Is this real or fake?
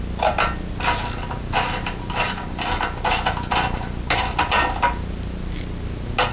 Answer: real